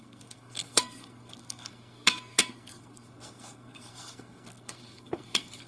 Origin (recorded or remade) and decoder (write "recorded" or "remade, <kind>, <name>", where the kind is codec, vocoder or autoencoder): remade, codec, SNAC